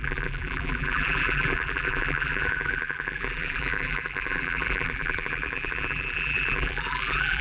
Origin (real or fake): fake